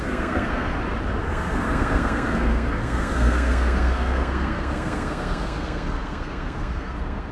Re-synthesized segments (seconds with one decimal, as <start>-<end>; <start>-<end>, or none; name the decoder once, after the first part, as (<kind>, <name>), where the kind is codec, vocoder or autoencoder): 0.0-0.7 (codec, SNAC); 1.2-7.3